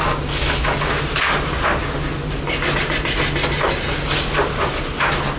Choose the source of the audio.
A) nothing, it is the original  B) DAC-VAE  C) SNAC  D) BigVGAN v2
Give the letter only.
A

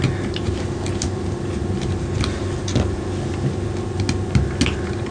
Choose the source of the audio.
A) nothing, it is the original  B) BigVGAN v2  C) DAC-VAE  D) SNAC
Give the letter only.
A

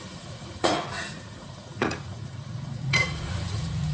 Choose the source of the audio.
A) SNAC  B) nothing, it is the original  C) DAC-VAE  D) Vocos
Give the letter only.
D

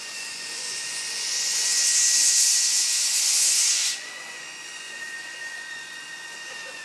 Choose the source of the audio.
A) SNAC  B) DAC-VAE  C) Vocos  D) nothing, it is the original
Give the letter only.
C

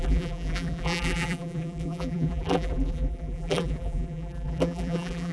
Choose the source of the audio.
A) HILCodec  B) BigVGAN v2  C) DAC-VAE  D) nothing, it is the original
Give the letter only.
B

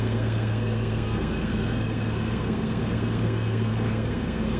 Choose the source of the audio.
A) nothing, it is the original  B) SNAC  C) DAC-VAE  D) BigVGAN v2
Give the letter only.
B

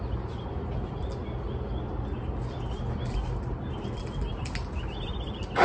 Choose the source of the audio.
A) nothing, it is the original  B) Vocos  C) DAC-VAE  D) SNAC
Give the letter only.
A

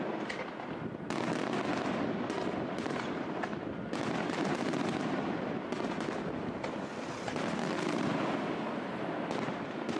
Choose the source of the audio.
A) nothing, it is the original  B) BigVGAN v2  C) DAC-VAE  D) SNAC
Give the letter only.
A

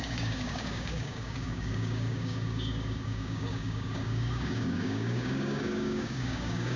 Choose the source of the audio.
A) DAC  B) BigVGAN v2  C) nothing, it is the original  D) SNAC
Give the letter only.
A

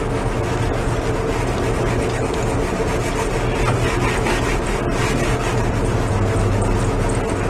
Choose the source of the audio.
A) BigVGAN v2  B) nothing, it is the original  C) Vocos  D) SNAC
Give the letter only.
B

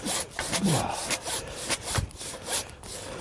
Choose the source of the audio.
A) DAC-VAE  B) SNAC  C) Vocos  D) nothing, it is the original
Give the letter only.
D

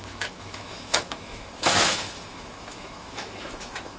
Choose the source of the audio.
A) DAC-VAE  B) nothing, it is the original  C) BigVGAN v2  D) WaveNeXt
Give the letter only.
A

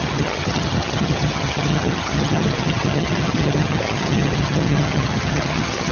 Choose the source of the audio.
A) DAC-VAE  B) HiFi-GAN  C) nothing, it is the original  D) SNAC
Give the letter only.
B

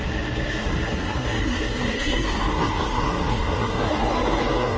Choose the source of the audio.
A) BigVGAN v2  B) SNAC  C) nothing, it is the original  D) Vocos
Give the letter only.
B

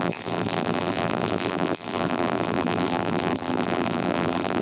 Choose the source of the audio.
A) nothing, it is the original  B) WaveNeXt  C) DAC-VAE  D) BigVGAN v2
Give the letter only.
D